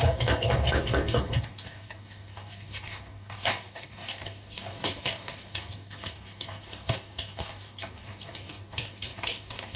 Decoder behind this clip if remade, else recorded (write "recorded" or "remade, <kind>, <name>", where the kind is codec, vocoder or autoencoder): remade, codec, DAC